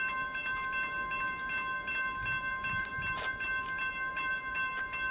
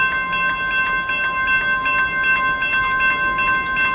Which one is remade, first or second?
first